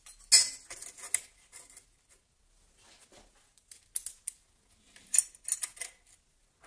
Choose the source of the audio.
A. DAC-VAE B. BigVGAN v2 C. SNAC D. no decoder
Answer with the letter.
D